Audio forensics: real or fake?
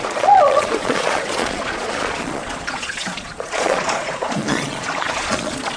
fake